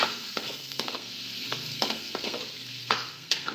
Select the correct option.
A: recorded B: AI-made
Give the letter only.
B